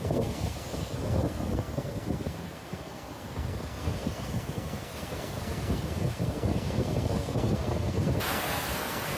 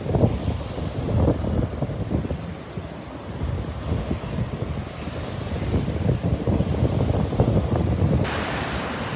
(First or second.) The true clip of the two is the second